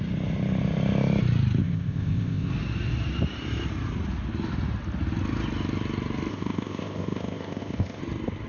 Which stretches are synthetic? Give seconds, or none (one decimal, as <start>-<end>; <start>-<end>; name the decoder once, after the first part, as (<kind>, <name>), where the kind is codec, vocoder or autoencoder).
1.6-2.5 (codec, ZipCodec); 6.3-8.0